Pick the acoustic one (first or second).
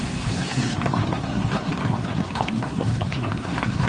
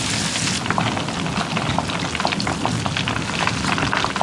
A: second